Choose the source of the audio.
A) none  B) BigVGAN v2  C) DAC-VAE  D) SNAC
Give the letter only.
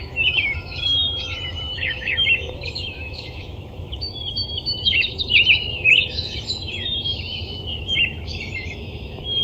C